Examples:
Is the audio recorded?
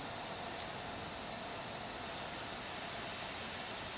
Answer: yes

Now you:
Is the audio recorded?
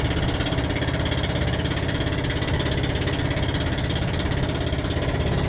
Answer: yes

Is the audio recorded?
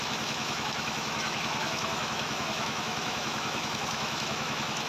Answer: no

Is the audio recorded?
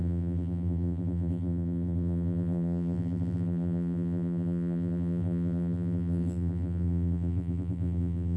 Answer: no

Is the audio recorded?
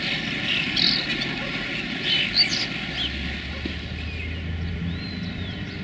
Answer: yes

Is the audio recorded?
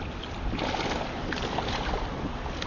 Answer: yes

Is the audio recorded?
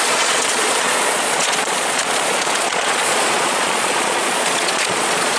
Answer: no